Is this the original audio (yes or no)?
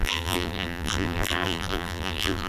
no